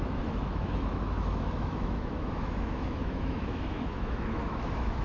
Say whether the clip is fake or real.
fake